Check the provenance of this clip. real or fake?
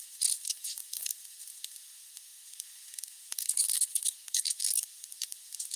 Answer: fake